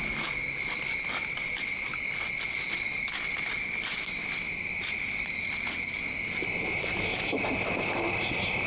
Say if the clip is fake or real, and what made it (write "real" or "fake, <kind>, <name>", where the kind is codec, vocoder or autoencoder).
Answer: real